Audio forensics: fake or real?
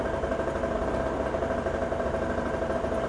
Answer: real